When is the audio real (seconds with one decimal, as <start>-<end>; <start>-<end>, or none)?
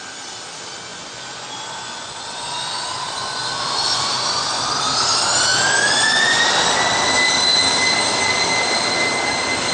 0.0-0.9; 4.6-5.5; 6.4-9.7